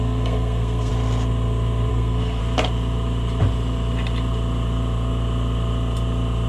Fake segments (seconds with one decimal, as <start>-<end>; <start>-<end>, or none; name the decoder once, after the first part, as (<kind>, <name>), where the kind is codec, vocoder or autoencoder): 0.0-0.9 (codec, SNAC); 1.9-2.4